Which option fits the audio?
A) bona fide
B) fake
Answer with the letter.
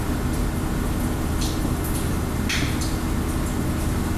A